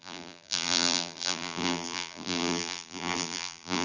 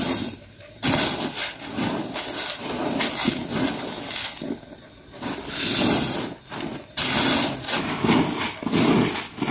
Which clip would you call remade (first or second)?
first